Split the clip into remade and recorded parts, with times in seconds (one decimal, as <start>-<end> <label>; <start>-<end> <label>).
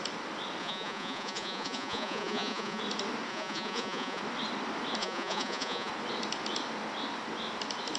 0.0-0.6 recorded; 0.6-2.8 remade; 2.8-3.3 recorded; 3.3-4.2 remade; 4.2-5.0 recorded; 5.0-5.9 remade; 5.9-8.0 recorded